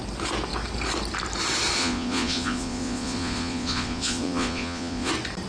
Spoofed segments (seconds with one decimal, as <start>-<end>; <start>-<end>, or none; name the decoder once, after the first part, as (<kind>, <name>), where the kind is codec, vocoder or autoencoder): 1.8-5.1 (vocoder, Vocos)